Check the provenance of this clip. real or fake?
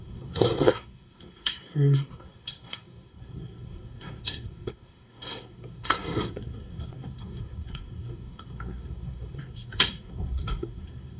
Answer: fake